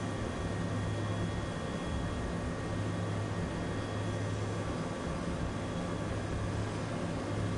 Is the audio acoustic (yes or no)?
yes